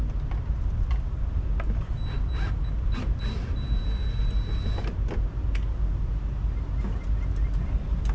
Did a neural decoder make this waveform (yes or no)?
no